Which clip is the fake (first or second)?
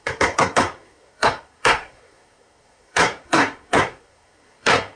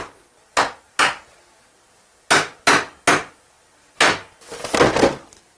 first